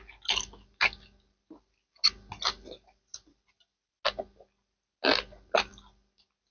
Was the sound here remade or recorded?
recorded